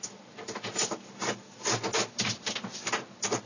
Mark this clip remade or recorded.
recorded